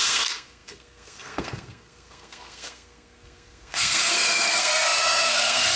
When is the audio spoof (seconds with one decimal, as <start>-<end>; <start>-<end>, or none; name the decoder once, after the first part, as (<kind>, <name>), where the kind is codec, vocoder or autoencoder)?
0.0-5.8 (codec, SNAC)